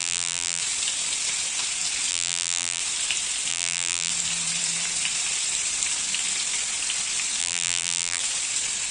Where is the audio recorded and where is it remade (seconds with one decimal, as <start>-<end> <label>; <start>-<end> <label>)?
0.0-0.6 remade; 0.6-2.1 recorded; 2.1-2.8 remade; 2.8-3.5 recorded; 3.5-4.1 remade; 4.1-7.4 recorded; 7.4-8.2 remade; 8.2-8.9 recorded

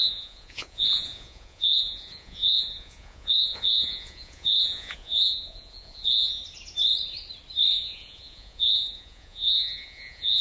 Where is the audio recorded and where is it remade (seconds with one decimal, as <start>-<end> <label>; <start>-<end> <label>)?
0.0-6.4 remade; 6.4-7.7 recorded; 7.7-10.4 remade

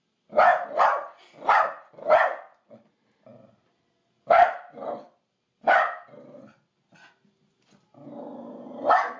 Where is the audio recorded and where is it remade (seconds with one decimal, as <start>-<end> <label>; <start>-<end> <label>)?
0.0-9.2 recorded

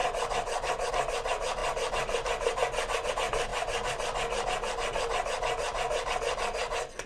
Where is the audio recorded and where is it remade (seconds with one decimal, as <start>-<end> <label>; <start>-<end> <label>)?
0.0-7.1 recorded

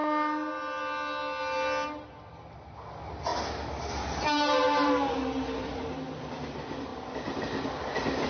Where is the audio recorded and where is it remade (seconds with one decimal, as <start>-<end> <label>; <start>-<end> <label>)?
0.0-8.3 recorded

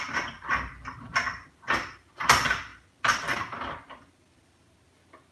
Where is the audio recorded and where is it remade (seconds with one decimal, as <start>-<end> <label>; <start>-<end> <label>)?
0.0-2.7 recorded; 2.7-4.7 remade; 4.7-5.3 recorded